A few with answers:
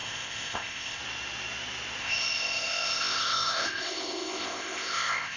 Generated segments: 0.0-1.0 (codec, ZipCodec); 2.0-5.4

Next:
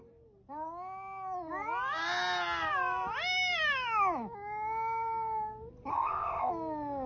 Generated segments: 5.9-6.5 (codec, ZipCodec)

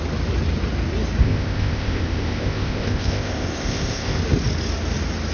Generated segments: 1.2-4.2 (codec, ZipCodec)

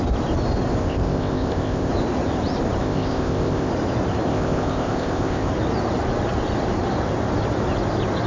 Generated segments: 0.8-1.9 (codec, ZipCodec); 2.8-3.7; 4.3-5.5